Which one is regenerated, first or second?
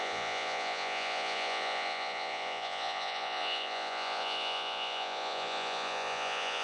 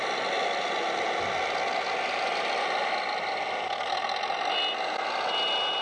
first